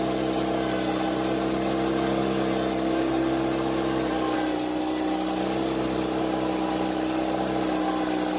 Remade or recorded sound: recorded